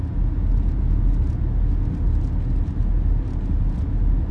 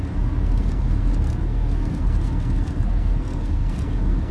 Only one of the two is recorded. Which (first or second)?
first